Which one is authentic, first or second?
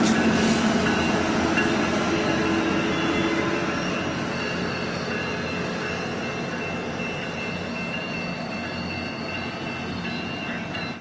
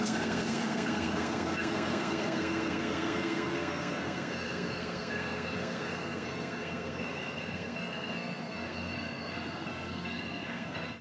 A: first